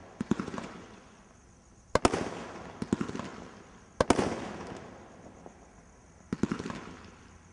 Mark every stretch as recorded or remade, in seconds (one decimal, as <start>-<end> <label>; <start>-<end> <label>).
0.0-1.3 remade; 1.3-7.5 recorded